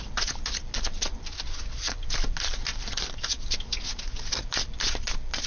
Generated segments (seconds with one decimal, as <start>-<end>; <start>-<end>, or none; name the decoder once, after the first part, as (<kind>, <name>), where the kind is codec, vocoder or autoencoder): none